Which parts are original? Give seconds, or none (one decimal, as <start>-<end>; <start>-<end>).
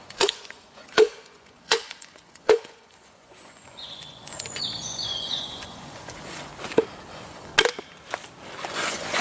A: 6.5-7.1; 7.5-8.6